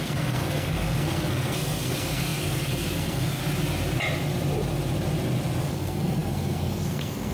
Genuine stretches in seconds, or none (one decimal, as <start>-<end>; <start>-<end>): 3.4-5.6